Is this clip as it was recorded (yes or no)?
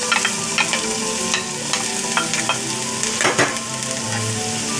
yes